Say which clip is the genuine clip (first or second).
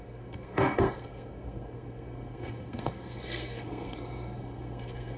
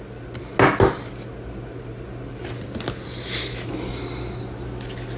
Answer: second